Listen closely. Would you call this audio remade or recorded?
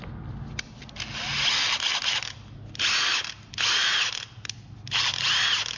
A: recorded